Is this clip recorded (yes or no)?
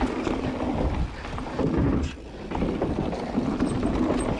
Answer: yes